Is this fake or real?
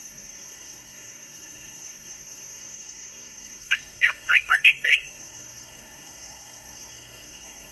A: fake